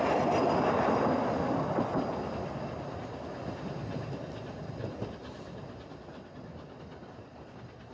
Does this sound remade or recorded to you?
recorded